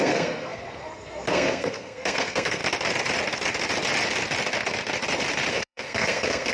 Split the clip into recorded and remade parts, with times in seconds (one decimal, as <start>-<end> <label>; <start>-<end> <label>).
0.0-2.6 remade; 2.6-5.5 recorded; 5.5-6.5 remade